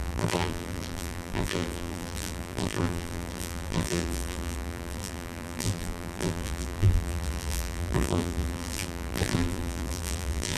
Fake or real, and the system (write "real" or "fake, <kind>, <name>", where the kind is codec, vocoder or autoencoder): fake, vocoder, BigVGAN v2